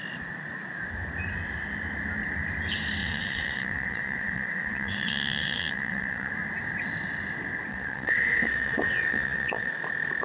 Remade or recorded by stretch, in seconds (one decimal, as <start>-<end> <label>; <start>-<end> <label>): 0.0-3.0 recorded; 3.0-6.3 remade; 6.3-7.7 recorded; 7.7-9.7 remade; 9.7-10.2 recorded